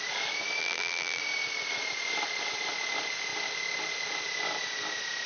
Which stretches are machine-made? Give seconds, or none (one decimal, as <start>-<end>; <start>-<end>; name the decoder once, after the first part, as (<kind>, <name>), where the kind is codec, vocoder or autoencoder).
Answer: 0.6-1.2 (vocoder, BigVGAN v2)